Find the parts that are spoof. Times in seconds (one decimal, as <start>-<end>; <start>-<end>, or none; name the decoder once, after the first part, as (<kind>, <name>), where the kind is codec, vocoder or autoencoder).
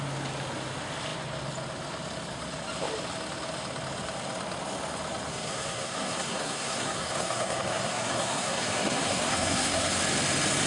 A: 5.3-10.0 (codec, SNAC)